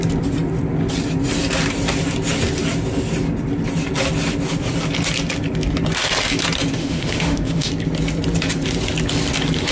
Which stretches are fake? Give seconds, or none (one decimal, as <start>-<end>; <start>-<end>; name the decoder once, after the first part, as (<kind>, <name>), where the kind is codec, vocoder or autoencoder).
6.8-7.7 (autoencoder, DAC-VAE)